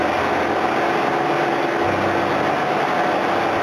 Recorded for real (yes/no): yes